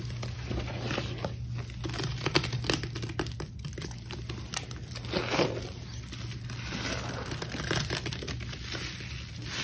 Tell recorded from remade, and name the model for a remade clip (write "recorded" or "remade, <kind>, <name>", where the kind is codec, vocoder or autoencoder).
recorded